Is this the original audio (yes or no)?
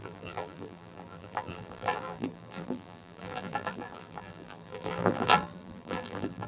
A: no